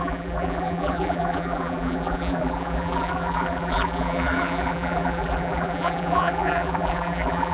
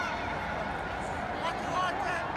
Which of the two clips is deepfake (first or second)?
first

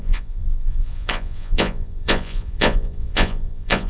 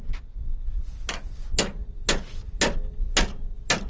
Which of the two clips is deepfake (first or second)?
first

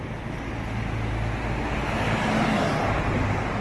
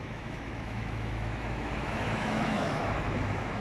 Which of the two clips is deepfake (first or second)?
second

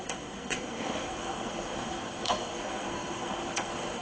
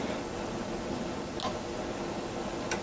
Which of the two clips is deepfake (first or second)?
first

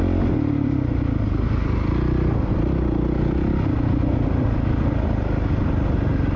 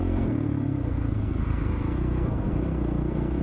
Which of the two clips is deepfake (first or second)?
second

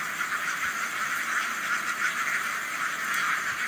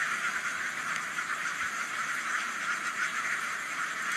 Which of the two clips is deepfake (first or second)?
second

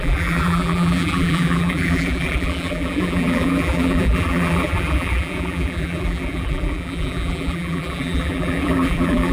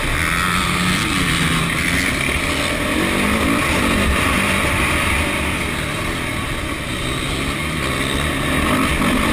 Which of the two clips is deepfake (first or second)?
first